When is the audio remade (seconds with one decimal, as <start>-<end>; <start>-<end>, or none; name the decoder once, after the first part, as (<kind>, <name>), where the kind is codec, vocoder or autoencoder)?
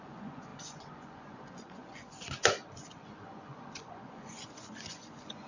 0.0-5.5 (vocoder, Vocos)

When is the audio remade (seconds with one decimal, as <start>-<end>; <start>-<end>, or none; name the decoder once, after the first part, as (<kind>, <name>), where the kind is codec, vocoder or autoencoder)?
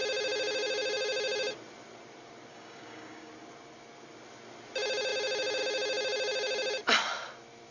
2.5-3.3 (codec, DAC)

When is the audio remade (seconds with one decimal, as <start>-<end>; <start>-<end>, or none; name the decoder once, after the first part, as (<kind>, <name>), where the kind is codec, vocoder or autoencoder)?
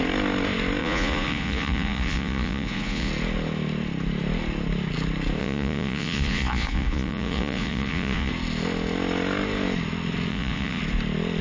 0.8-3.1 (vocoder, Vocos); 5.4-8.3; 10.3-10.8